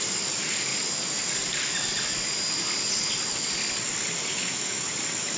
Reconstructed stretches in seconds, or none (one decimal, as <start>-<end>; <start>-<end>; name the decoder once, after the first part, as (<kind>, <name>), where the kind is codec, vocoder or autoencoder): 4.3-4.9 (autoencoder, DAC-VAE)